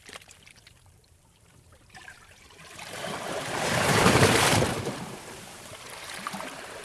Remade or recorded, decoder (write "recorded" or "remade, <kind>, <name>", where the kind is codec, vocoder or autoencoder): remade, vocoder, BigVGAN v2